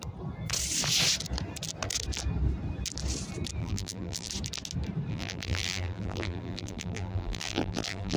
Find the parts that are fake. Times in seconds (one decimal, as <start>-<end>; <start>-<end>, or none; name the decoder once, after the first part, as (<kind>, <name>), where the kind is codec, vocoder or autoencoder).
3.6-4.3 (vocoder, BigVGAN v2); 5.1-8.2